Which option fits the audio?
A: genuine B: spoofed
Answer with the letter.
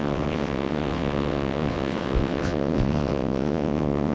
B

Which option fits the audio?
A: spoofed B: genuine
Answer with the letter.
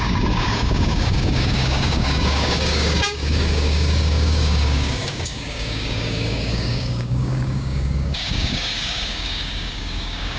A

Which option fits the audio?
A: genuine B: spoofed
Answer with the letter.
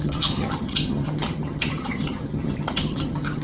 B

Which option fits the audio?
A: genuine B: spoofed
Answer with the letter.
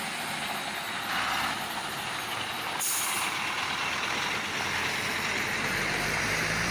A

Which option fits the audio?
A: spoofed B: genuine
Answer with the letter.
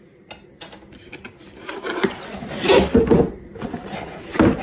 B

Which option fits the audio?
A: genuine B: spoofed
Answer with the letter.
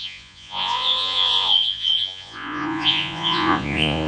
B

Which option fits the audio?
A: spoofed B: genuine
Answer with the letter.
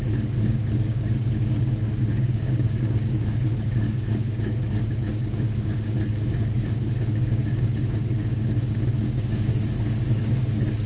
A